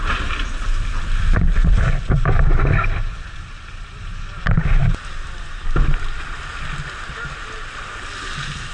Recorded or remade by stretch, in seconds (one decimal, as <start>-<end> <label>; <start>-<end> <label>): 0.0-8.7 recorded